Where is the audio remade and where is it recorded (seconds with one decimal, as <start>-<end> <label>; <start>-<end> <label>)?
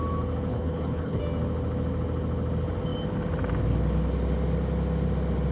0.0-0.5 recorded; 0.5-1.2 remade; 1.2-5.5 recorded